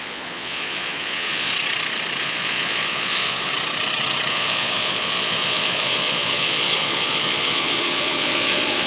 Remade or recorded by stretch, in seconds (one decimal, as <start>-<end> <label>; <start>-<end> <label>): 0.0-1.5 remade; 1.5-2.2 recorded; 2.2-3.5 remade; 3.5-4.3 recorded; 4.3-8.9 remade